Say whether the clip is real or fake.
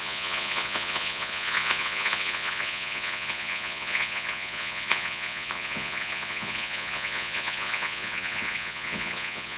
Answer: fake